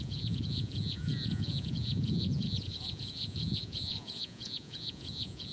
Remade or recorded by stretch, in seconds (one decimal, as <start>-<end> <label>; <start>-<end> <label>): 0.0-5.5 remade